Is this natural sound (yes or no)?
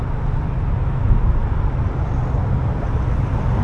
yes